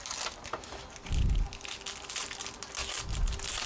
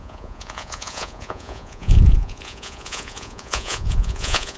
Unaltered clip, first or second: first